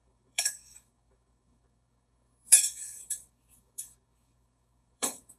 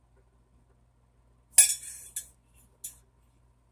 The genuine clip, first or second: second